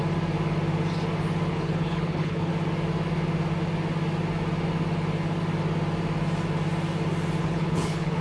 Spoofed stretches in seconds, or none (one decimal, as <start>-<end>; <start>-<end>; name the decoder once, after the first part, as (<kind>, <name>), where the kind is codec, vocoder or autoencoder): 1.5-2.5 (codec, HILCodec); 7.4-8.2